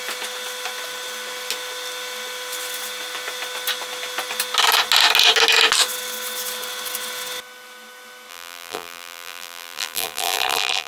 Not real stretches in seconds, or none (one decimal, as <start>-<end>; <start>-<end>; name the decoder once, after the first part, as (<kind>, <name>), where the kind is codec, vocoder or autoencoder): 8.3-10.9 (vocoder, BigVGAN v2)